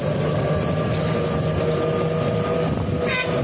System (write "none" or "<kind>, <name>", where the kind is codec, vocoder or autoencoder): none